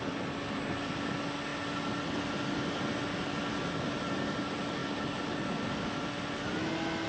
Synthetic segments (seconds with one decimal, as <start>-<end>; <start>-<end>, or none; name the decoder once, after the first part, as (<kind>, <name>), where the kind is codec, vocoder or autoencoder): none